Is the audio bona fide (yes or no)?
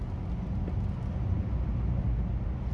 yes